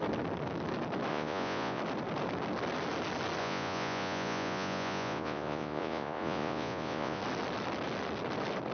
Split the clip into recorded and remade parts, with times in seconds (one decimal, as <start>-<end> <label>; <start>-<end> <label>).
0.0-1.1 recorded; 1.1-1.8 remade; 1.8-3.4 recorded; 3.4-7.2 remade; 7.2-8.7 recorded